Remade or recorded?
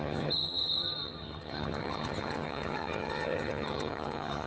remade